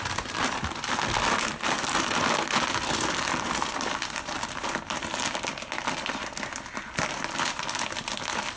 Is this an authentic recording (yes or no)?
yes